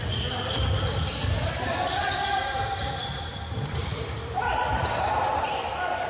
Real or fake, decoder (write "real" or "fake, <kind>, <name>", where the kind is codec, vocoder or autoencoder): fake, vocoder, BigVGAN v2